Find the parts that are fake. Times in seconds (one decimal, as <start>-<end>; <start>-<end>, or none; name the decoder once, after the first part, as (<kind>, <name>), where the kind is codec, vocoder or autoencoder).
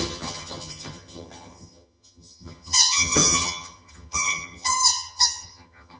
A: 0.0-6.0 (vocoder, HiFi-GAN)